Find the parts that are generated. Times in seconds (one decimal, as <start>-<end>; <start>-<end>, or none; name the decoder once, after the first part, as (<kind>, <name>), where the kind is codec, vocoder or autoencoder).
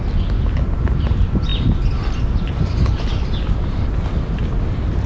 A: none